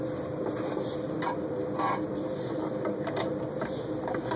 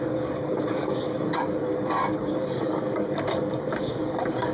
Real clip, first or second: first